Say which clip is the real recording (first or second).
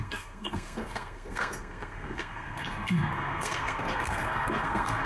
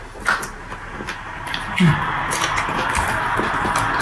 second